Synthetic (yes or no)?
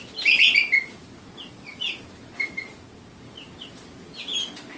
no